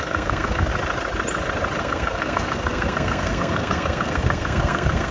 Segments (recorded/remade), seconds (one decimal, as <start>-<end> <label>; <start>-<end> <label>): 0.0-0.7 remade; 0.7-1.8 recorded; 1.8-5.1 remade